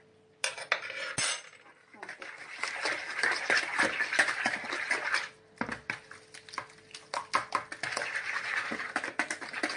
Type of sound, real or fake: real